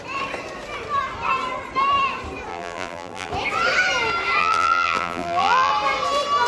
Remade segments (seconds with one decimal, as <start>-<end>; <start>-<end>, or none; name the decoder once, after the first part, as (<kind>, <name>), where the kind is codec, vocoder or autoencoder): 2.5-3.3 (vocoder, BigVGAN v2); 4.4-5.7